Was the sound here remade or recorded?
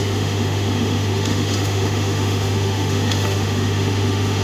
remade